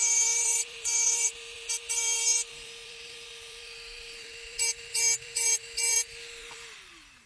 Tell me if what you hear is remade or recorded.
remade